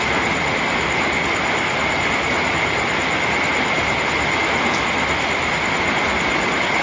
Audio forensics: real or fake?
real